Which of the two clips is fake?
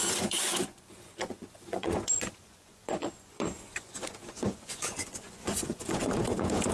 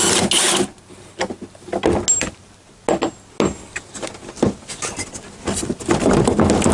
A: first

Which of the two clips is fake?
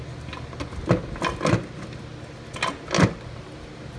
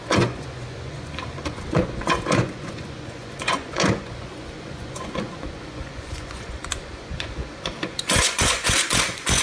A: second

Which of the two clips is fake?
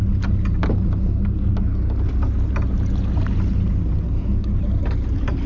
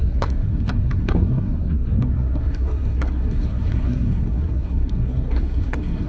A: second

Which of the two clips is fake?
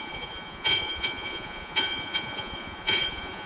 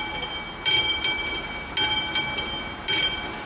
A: first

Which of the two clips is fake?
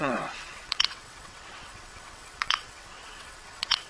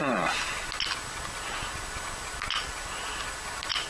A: first